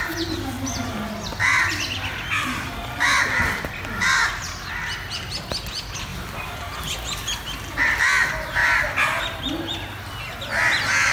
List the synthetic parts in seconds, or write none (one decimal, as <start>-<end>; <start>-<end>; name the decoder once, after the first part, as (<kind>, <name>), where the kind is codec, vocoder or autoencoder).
6.1-6.8 (vocoder, BigVGAN v2); 8.6-9.2